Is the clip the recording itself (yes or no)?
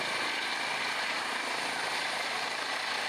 yes